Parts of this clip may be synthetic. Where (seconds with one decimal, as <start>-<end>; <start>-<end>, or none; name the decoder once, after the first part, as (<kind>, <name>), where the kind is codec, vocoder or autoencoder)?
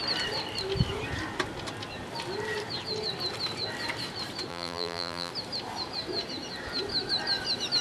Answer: 4.5-5.3 (vocoder, BigVGAN v2)